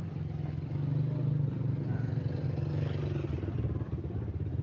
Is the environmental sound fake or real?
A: real